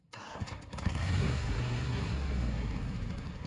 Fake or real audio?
fake